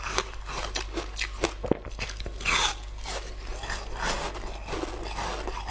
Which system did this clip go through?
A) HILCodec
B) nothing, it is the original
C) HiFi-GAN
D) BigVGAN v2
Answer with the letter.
B